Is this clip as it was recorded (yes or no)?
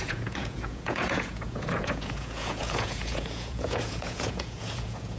no